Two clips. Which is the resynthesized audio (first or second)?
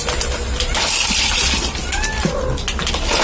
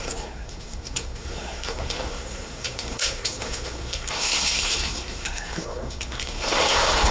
second